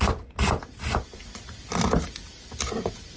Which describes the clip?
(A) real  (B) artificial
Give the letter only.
A